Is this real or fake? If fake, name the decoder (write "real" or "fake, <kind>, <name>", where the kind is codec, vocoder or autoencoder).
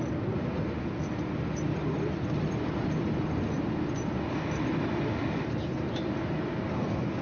real